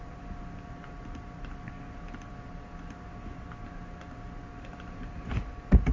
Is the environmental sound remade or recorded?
recorded